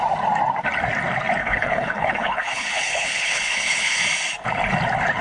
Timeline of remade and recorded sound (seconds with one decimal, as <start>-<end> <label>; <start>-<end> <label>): 0.0-1.4 recorded; 1.4-4.0 remade; 4.0-5.2 recorded